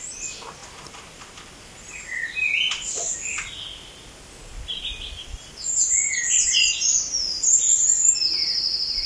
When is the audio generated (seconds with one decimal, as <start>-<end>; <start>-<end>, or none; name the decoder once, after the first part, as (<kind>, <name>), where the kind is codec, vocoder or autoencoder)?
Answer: none